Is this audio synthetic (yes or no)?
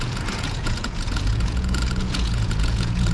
yes